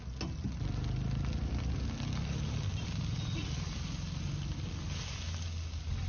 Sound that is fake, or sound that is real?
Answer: real